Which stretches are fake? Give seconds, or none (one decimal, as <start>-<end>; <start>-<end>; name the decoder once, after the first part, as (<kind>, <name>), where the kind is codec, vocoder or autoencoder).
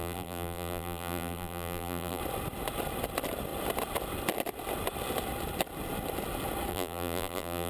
0.0-2.2 (vocoder, BigVGAN v2); 6.7-7.7